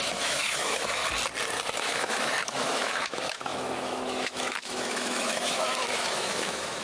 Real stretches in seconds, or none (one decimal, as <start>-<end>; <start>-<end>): 1.0-1.8